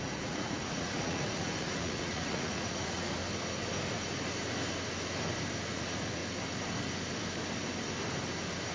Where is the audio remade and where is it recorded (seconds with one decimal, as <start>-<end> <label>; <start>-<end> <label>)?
0.0-3.2 remade; 3.2-5.7 recorded; 5.7-6.2 remade; 6.2-8.7 recorded